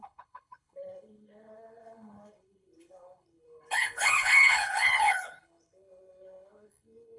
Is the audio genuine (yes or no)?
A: no